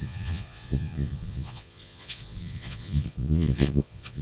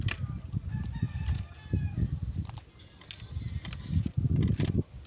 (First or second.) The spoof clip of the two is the first